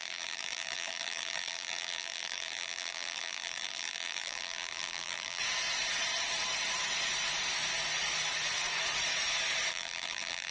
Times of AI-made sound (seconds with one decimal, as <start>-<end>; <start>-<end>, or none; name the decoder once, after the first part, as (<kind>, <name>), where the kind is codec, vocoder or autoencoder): 0.0-5.4 (vocoder, BigVGAN v2); 9.7-10.5